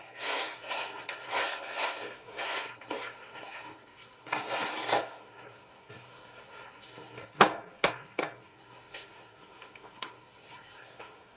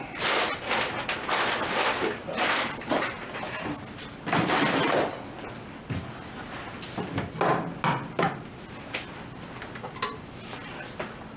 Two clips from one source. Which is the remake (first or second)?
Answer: first